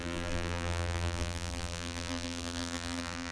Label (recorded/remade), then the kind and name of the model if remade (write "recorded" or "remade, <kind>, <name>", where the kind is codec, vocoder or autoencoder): remade, vocoder, BigVGAN v2